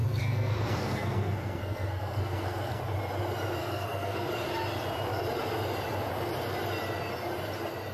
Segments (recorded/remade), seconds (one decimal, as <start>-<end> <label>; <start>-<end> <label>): 0.0-2.8 remade; 2.8-3.6 recorded; 3.6-4.3 remade; 4.3-7.9 recorded